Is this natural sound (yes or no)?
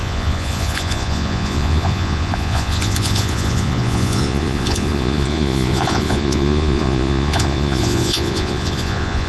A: no